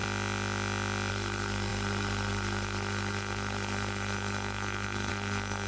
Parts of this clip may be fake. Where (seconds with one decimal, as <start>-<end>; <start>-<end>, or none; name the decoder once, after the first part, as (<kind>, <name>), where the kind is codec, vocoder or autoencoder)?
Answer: 1.1-5.7 (codec, SNAC)